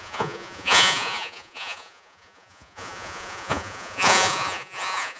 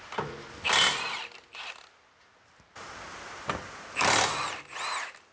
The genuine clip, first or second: second